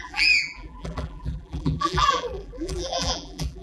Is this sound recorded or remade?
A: remade